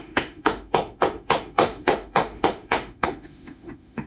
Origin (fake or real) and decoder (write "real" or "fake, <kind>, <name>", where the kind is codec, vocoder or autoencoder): fake, autoencoder, DAC-VAE